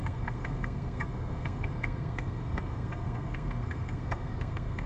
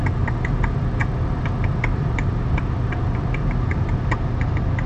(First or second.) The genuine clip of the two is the second